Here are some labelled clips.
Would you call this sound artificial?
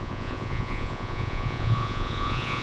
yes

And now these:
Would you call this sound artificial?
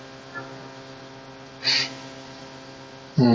no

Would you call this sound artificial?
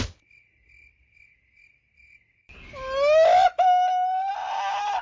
no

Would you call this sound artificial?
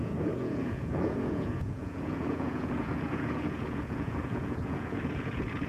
yes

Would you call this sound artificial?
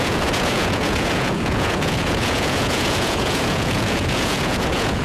yes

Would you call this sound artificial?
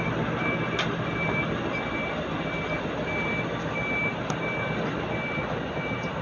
no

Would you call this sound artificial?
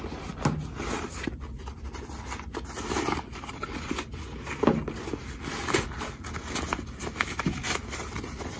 no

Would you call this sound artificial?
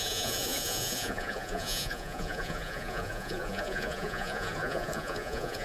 yes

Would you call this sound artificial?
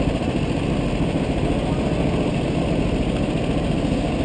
no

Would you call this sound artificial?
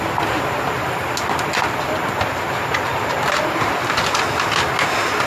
no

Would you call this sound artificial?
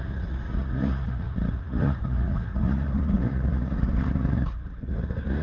yes